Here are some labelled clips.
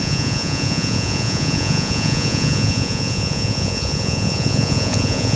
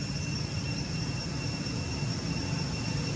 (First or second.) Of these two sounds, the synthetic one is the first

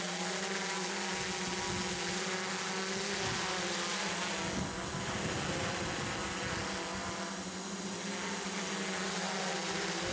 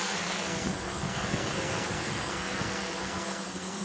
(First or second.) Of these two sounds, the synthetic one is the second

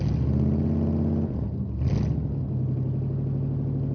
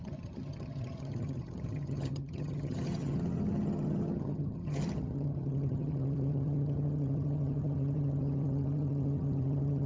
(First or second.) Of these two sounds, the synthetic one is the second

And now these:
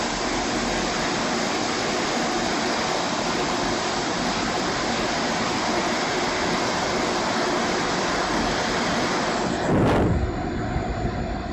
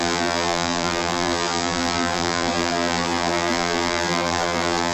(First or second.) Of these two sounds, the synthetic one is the second